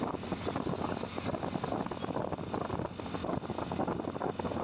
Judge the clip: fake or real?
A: real